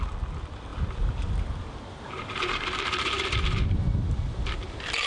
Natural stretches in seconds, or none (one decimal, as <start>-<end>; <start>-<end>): 0.0-0.7; 3.8-5.1